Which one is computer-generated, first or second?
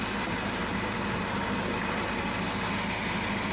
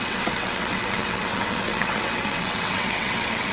second